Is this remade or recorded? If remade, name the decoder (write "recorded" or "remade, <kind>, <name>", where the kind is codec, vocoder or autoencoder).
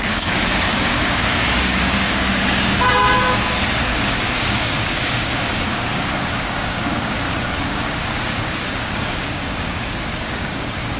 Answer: remade, codec, DAC